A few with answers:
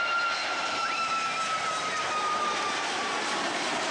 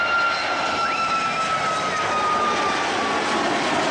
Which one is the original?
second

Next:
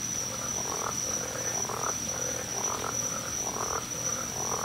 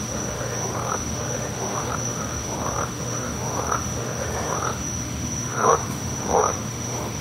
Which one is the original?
first